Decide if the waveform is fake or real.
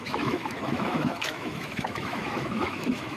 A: fake